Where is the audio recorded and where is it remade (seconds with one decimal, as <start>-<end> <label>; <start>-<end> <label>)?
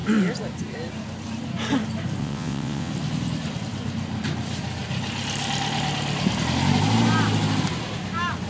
0.0-2.2 recorded; 2.2-2.9 remade; 2.9-8.5 recorded